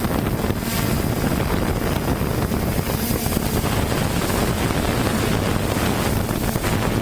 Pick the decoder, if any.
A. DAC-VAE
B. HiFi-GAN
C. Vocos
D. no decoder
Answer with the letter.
D